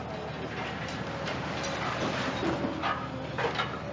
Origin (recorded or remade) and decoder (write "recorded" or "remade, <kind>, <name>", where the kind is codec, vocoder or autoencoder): recorded